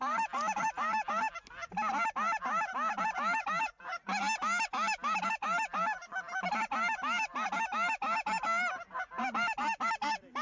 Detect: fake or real real